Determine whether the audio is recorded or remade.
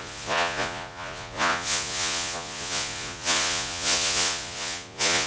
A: remade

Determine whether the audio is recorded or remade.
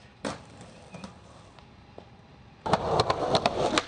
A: remade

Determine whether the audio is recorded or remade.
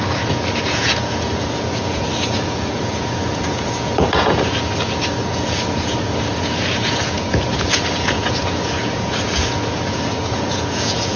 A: remade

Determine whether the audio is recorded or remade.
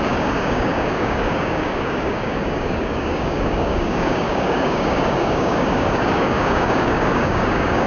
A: remade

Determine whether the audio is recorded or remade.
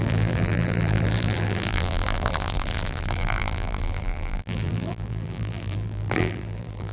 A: remade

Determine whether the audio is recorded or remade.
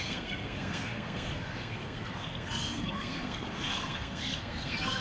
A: remade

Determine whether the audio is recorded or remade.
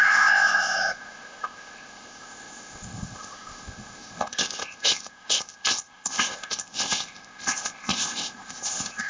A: remade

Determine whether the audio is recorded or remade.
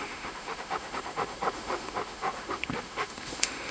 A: remade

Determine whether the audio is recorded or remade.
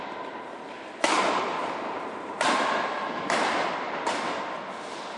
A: recorded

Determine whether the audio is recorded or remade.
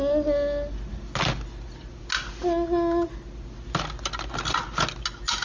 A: recorded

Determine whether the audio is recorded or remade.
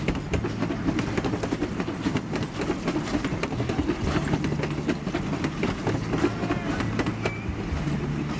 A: recorded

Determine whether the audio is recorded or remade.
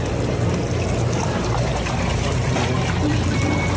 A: recorded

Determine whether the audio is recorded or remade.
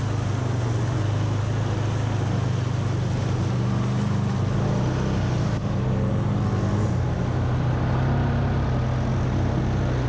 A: recorded